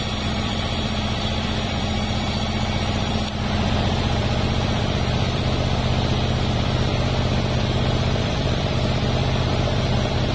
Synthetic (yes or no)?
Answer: yes